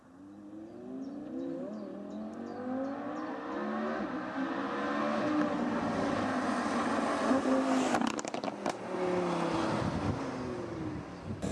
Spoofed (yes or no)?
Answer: no